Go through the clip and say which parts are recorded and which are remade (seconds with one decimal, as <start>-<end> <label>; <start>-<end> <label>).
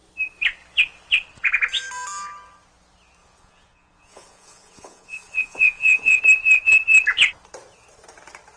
0.0-3.2 recorded; 3.2-6.2 remade; 6.2-8.6 recorded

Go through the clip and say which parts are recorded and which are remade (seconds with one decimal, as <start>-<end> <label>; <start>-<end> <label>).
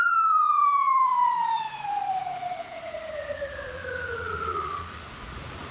0.0-5.7 remade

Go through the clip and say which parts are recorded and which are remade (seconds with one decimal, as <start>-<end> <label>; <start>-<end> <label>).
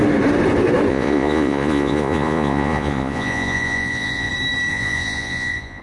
0.0-0.9 recorded; 0.9-4.3 remade; 4.3-4.7 recorded; 4.7-5.8 remade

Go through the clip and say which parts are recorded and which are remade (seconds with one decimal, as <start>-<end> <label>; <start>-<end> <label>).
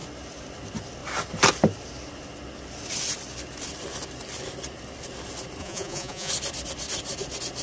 0.0-5.6 recorded; 5.6-6.3 remade; 6.3-7.6 recorded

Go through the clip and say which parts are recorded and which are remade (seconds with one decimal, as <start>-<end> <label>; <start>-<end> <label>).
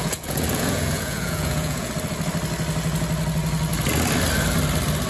0.0-1.9 remade; 1.9-5.1 recorded